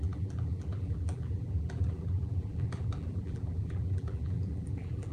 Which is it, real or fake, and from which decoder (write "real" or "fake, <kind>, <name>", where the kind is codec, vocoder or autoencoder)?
fake, vocoder, BigVGAN v2